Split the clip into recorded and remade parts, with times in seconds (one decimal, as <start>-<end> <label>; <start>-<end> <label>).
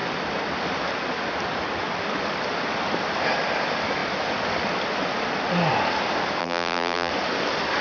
0.0-6.4 recorded; 6.4-7.1 remade; 7.1-7.8 recorded